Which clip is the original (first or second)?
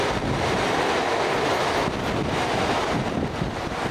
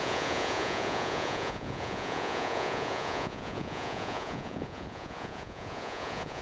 first